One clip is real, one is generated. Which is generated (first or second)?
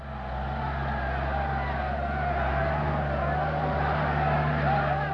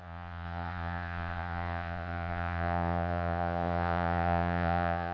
second